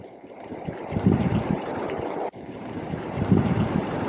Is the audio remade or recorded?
remade